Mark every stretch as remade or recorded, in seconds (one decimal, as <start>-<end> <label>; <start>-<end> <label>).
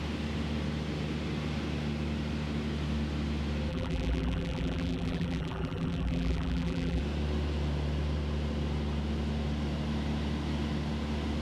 0.0-3.7 recorded; 3.7-7.0 remade; 7.0-11.4 recorded